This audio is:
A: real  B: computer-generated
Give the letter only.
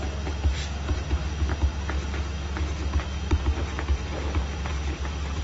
A